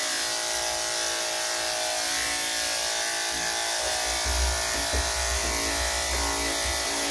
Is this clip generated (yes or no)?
no